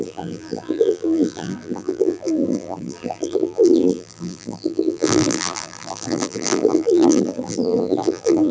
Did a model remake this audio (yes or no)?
yes